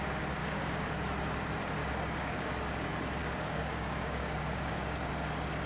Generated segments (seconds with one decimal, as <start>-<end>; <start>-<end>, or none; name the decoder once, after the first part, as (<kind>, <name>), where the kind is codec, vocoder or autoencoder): 0.4-0.9 (codec, DAC); 1.8-2.5; 3.2-5.1